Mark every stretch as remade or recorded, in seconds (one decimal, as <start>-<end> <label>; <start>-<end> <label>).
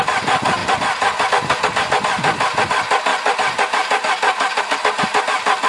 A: 0.0-0.6 recorded; 0.6-1.3 remade; 1.3-3.1 recorded; 3.1-4.6 remade; 4.6-5.7 recorded